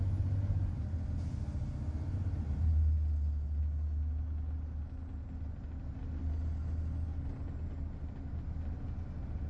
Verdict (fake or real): real